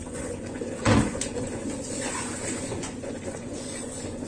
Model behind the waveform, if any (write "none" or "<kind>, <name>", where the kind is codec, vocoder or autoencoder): vocoder, Vocos